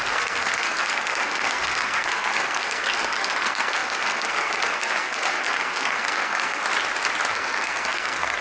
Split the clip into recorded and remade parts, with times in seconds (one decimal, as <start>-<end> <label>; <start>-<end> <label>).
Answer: 0.0-6.6 remade; 6.6-7.3 recorded; 7.3-8.4 remade